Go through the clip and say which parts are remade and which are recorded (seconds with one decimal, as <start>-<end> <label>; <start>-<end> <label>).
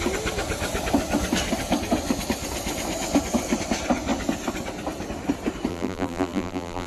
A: 0.0-5.7 recorded; 5.7-6.9 remade